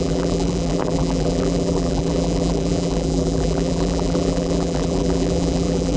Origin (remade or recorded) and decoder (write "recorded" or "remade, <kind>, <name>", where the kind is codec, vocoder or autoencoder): remade, vocoder, BigVGAN v2